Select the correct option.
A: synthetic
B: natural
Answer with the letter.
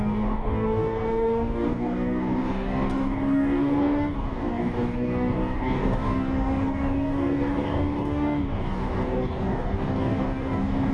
A